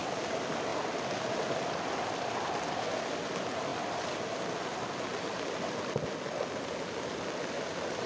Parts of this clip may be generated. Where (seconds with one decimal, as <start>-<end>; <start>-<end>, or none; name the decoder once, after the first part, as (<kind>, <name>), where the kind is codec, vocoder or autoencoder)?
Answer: none